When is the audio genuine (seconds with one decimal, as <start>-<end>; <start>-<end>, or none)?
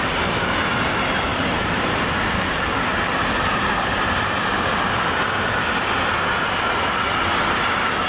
0.0-8.1